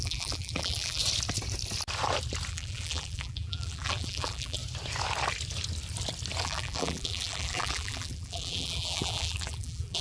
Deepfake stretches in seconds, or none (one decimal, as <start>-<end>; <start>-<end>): 0.0-1.0; 2.5-4.6; 6.4-10.0